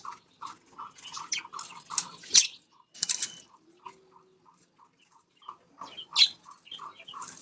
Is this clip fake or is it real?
real